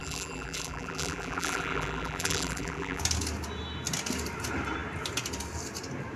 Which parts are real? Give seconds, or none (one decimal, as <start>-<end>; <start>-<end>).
3.0-6.2